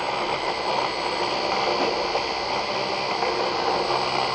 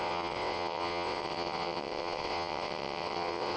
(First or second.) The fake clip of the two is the second